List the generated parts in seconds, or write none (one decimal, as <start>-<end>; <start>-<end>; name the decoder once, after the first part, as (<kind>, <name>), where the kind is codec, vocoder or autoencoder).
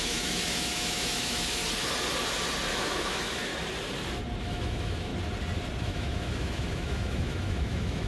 0.0-1.6 (autoencoder, DAC-VAE); 2.7-3.5; 4.4-5.1; 5.8-8.1